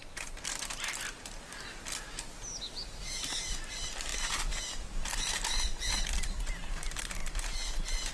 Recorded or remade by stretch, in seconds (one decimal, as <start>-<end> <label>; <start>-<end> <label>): 0.0-3.0 recorded; 3.0-3.6 remade; 3.6-4.1 recorded; 4.1-6.4 remade; 6.4-7.2 recorded; 7.2-8.1 remade

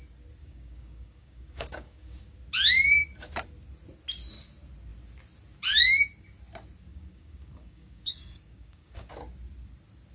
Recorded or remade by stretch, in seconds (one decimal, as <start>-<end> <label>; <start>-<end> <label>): 0.0-0.4 recorded; 0.4-2.2 remade; 2.2-6.9 recorded; 6.9-9.1 remade; 9.1-10.1 recorded